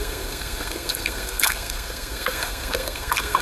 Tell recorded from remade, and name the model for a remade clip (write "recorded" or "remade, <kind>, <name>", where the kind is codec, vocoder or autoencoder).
remade, codec, SNAC